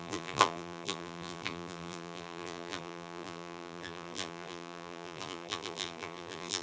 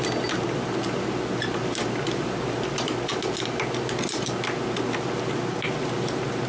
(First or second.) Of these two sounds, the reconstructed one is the first